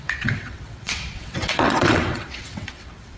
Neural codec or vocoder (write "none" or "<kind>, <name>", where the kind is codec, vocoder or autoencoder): vocoder, WaveNeXt